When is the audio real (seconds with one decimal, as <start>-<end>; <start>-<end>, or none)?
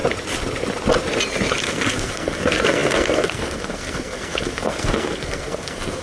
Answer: 0.0-1.6